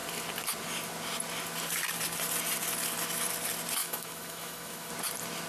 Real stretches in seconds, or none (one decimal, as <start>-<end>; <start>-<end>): 0.0-3.8; 4.9-5.5